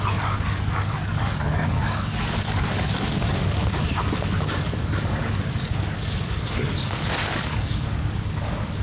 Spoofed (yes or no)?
yes